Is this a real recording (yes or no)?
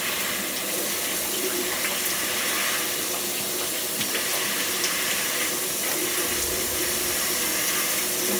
yes